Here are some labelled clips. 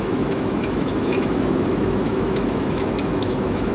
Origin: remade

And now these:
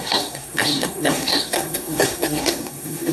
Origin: remade